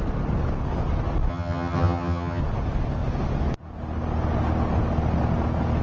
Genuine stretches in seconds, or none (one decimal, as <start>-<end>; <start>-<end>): 0.0-1.3; 2.4-5.8